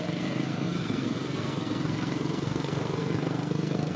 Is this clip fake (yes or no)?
yes